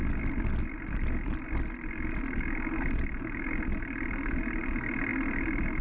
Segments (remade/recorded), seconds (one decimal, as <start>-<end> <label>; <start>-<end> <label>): 0.0-5.8 recorded